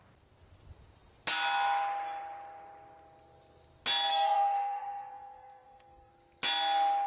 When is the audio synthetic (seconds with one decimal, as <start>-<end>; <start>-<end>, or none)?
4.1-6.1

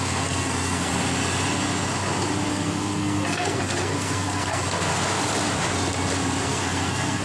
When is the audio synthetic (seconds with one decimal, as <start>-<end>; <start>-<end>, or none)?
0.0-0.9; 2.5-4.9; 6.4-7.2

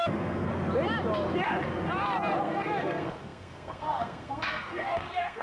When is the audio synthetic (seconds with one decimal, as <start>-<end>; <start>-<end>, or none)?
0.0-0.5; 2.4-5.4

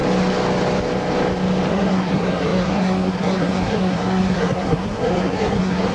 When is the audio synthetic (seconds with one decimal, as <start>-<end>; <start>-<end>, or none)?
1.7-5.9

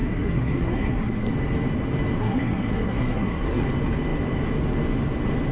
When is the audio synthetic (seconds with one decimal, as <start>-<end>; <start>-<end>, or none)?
0.0-1.3; 2.2-3.6

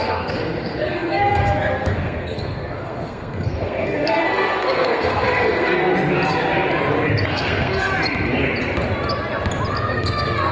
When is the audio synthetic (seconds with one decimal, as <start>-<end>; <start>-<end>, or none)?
0.0-5.9; 7.3-7.9; 9.9-10.5